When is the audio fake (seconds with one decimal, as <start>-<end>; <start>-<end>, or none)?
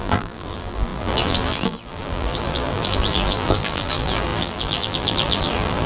0.0-5.9